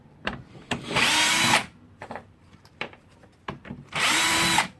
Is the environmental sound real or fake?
fake